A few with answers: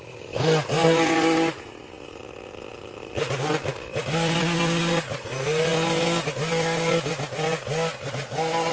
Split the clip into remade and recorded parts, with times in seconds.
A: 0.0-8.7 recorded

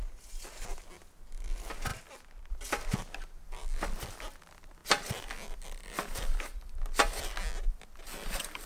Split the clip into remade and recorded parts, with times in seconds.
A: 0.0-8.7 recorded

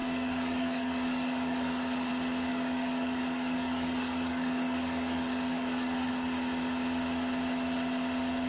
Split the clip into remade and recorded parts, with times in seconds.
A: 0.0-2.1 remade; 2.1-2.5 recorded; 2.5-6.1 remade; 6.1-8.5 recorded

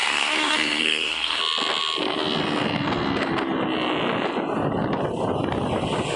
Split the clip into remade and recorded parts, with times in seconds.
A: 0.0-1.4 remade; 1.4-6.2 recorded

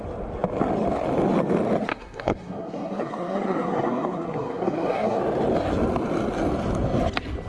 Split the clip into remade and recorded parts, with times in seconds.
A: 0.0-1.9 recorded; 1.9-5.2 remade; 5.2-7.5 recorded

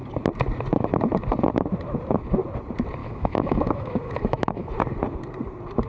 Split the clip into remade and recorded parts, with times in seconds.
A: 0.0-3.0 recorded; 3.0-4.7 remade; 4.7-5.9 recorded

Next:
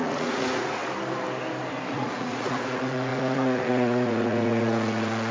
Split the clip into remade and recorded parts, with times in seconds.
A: 0.0-0.8 remade; 0.8-1.9 recorded; 1.9-5.3 remade

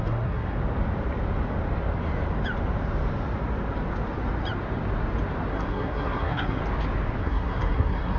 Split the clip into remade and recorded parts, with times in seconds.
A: 0.0-0.6 remade; 0.6-5.5 recorded; 5.5-6.6 remade; 6.6-7.2 recorded; 7.2-8.2 remade